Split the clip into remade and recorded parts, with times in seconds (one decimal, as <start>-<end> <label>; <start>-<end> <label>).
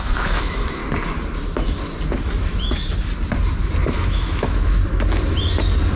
0.0-0.8 remade; 0.8-3.8 recorded; 3.8-4.8 remade; 4.8-6.0 recorded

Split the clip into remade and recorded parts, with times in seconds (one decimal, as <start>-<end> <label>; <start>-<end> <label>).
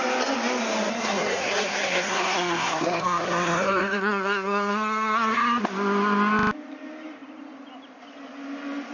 0.0-0.9 recorded; 0.9-5.6 remade; 5.6-8.9 recorded